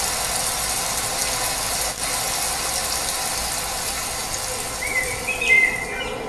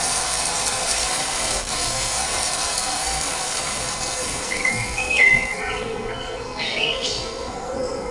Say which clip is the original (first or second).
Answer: first